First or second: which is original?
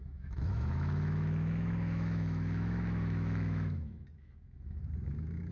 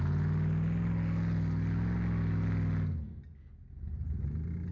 second